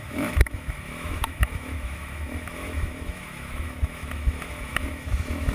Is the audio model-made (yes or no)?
yes